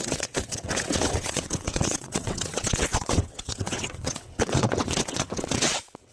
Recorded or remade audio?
remade